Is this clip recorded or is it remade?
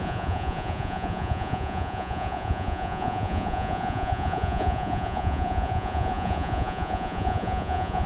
remade